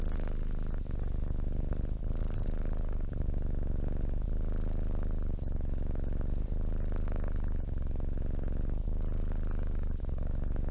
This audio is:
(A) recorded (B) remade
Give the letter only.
A